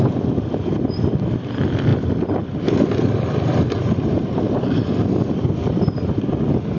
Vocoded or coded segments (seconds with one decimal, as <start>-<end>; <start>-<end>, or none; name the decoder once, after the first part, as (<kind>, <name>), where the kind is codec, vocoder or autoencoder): 0.0-1.9 (vocoder, BigVGAN v2); 2.6-6.8